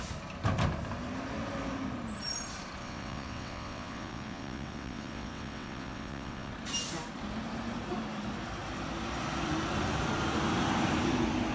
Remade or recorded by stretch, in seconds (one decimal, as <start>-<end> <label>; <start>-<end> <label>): 0.0-2.8 recorded; 2.8-6.5 remade; 6.5-11.5 recorded